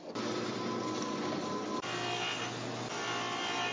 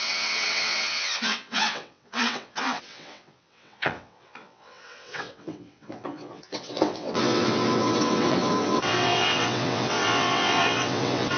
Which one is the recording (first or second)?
first